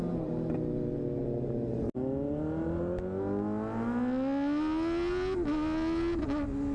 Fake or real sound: real